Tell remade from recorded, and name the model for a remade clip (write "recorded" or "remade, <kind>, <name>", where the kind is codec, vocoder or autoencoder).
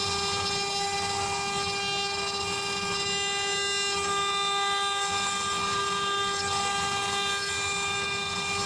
recorded